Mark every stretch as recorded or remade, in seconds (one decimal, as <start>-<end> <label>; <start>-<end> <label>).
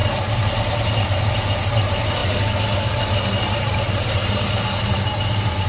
0.0-1.3 remade; 1.3-5.7 recorded